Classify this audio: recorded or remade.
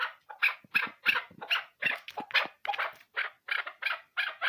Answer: recorded